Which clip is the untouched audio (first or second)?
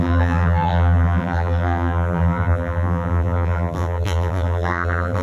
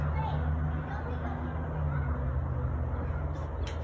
second